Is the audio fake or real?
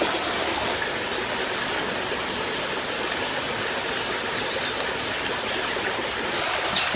real